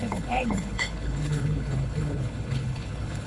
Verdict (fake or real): fake